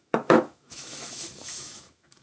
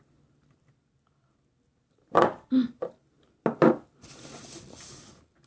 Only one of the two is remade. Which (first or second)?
first